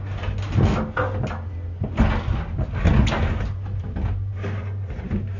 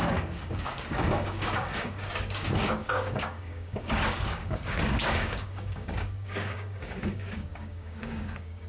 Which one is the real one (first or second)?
first